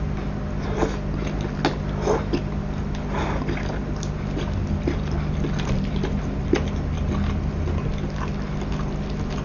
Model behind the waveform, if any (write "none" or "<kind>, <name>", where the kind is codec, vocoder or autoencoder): none